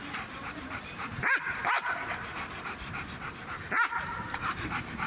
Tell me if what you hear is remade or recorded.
remade